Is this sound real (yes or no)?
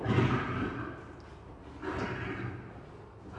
yes